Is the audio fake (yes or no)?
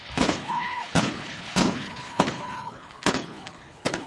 yes